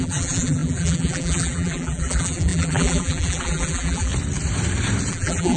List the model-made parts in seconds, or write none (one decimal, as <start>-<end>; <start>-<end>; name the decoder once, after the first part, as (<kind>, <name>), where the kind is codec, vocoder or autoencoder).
0.0-4.1 (vocoder, BigVGAN v2); 5.1-5.6